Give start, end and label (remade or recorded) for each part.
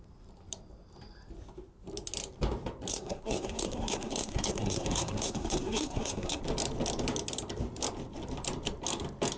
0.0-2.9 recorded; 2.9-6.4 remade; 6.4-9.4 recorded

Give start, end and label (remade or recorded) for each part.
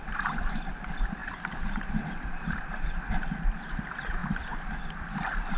0.0-1.2 recorded; 1.2-3.0 remade; 3.0-5.6 recorded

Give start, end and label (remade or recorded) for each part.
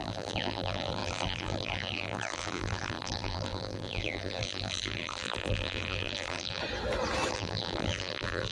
0.0-6.6 remade; 6.6-7.3 recorded; 7.3-8.5 remade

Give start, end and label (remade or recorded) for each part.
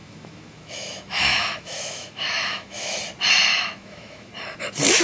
0.0-3.0 remade; 3.0-3.5 recorded; 3.5-4.3 remade; 4.3-5.0 recorded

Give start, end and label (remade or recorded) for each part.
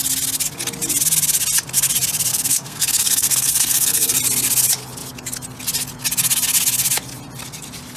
0.0-2.3 recorded; 2.3-4.2 remade; 4.2-8.0 recorded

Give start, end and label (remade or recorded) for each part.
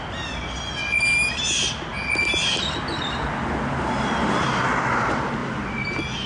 0.0-6.3 recorded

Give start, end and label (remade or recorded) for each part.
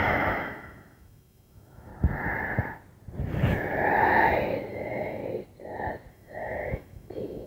0.0-1.9 remade; 1.9-4.7 recorded; 4.7-5.2 remade; 5.2-6.1 recorded; 6.1-7.5 remade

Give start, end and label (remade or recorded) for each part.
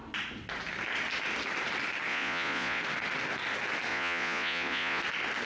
0.0-2.1 recorded; 2.1-2.8 remade; 2.8-3.9 recorded; 3.9-5.0 remade; 5.0-5.5 recorded